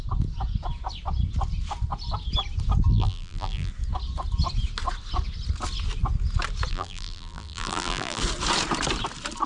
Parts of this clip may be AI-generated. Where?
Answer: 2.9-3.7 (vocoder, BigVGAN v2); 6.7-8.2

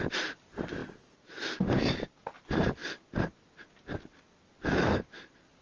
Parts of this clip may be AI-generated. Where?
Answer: none

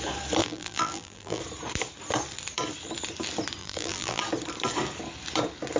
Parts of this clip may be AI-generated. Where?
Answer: 0.4-1.4 (vocoder, BigVGAN v2); 3.6-4.2

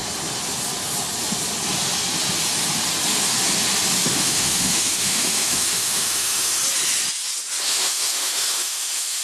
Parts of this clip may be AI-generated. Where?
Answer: 4.1-6.6 (autoencoder, DAC-VAE); 7.6-9.2

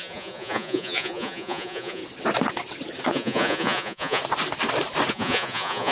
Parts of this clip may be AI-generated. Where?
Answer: 0.0-2.0 (vocoder, Vocos); 3.1-4.2; 5.1-5.9